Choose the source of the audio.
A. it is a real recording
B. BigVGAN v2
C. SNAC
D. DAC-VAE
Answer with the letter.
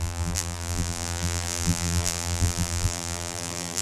B